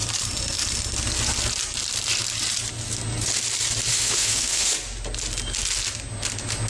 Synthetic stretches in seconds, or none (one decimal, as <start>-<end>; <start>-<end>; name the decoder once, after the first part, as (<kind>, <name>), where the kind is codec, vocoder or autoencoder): 3.9-4.7 (autoencoder, DAC-VAE)